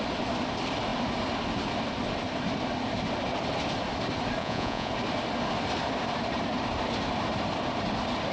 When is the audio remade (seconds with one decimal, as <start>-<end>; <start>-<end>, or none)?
4.4-4.9

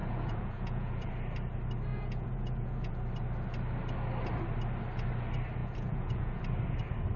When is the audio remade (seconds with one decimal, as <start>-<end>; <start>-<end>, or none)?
0.0-1.1; 1.9-2.9; 5.6-6.4

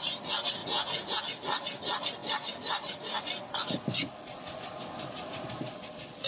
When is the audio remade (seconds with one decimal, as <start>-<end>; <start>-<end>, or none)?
0.6-1.2